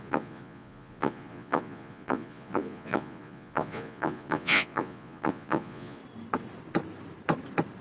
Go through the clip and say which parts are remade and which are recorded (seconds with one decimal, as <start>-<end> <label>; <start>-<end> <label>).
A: 0.0-6.0 remade; 6.0-7.8 recorded